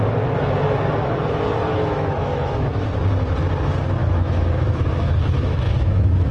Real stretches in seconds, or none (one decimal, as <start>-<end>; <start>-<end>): 0.0-1.7; 3.0-4.0